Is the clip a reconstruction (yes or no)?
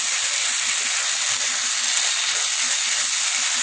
no